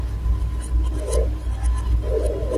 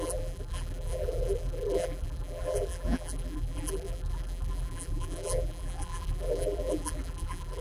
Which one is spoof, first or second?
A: second